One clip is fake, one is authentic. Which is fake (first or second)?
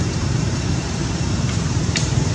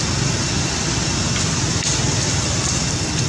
first